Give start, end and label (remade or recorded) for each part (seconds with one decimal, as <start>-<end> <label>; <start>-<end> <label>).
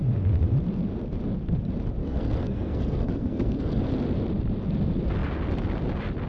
0.0-2.0 recorded; 2.0-3.8 remade; 3.8-6.3 recorded